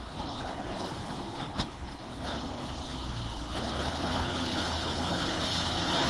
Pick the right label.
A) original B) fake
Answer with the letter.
B